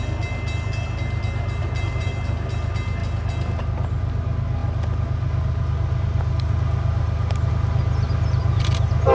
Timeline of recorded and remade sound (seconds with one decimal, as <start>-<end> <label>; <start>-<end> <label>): 0.0-1.6 recorded; 1.6-2.1 remade; 2.1-9.1 recorded